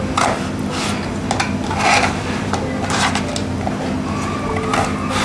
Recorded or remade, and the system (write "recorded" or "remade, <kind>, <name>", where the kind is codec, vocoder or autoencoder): recorded